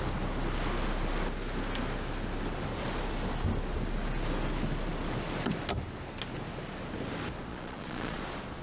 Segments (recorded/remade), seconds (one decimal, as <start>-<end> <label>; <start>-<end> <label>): 0.0-7.5 recorded; 7.5-8.2 remade; 8.2-8.6 recorded